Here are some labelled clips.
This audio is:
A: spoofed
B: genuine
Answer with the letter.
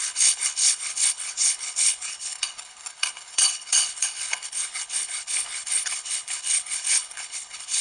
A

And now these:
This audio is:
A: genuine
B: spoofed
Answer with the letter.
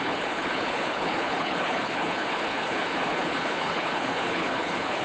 B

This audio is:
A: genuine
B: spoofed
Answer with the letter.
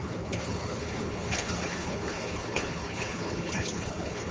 B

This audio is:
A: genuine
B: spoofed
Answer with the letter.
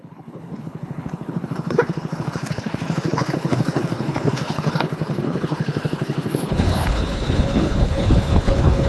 B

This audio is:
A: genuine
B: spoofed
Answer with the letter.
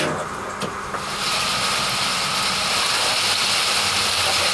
A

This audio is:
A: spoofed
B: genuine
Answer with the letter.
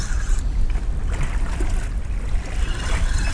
B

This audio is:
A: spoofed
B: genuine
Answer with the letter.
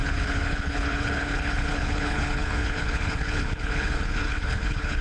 A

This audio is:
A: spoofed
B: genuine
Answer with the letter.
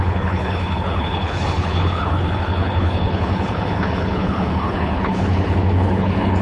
A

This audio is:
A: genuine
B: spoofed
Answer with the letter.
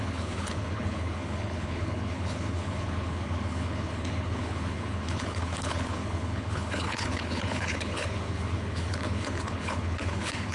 B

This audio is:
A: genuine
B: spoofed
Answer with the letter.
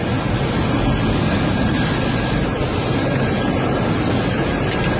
A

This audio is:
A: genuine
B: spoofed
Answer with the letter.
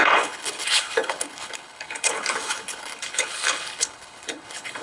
B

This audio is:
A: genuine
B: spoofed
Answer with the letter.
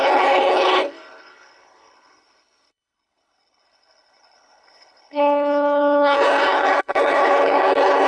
B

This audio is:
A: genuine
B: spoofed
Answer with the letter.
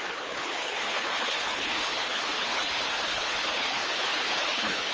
B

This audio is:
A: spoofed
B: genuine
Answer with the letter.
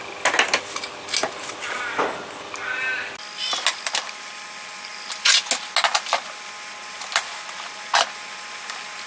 B